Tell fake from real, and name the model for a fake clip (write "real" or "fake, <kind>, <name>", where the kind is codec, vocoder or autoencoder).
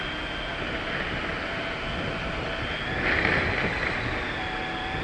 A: real